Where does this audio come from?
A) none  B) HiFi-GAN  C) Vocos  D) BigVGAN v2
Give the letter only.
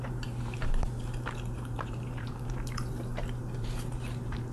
D